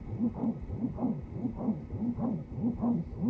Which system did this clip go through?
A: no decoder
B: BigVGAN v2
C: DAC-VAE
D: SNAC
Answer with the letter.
A